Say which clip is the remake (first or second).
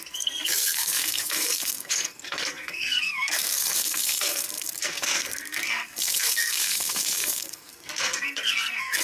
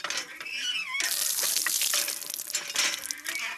first